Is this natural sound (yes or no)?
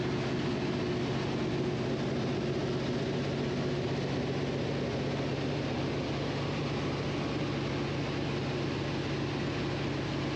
yes